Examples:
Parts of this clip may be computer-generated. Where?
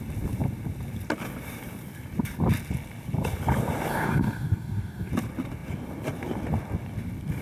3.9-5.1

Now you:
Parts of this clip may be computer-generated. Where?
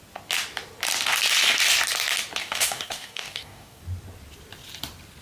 2.4-3.8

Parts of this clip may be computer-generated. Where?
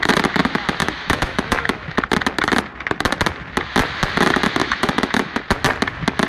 0.8-2.0; 4.6-5.4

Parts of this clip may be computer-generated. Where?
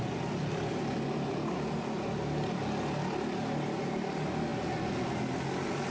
none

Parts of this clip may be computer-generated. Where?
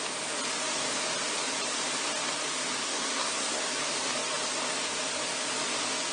2.8-3.6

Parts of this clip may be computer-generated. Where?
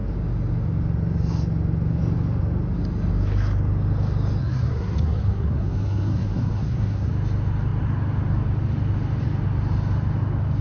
4.4-7.1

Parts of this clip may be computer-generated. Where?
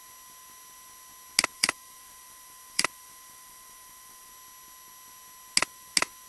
1.5-4.3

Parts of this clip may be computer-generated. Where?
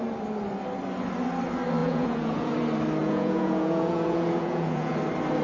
1.8-2.5; 3.0-4.9